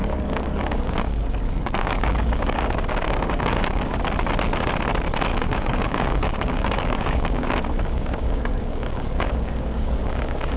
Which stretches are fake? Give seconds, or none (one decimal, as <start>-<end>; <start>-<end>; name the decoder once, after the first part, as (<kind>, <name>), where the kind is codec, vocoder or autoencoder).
0.0-3.8 (codec, DAC); 5.3-10.6